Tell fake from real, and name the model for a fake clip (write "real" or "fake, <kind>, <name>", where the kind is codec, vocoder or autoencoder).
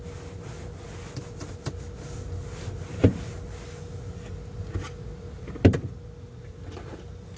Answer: real